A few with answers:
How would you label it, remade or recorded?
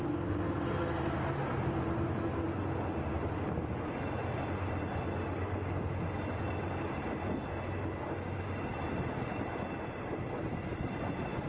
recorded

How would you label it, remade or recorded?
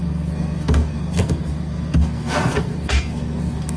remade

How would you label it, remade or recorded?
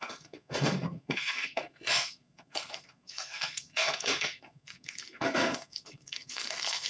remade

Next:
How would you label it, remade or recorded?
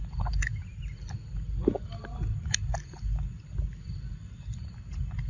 recorded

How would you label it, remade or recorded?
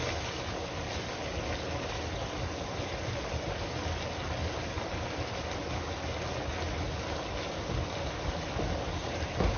recorded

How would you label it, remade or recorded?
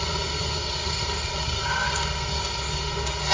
remade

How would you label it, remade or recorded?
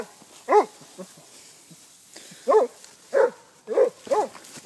recorded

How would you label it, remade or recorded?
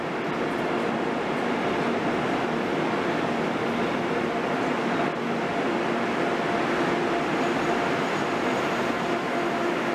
recorded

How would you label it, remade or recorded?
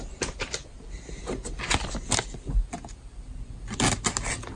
recorded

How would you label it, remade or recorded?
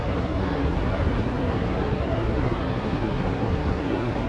remade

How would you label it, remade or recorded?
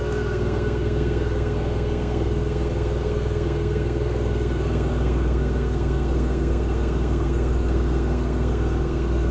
remade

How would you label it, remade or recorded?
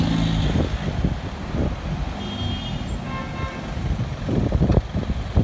recorded